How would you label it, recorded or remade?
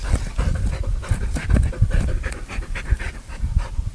recorded